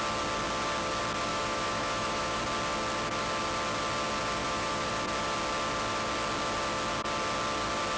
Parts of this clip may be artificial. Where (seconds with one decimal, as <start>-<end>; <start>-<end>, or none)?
1.3-2.4; 4.4-4.9